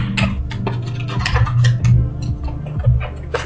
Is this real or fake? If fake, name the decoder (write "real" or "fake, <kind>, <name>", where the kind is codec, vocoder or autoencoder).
real